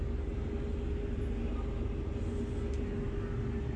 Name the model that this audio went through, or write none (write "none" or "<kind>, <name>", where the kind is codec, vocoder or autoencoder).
none